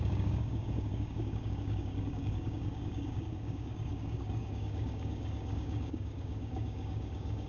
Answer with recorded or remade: remade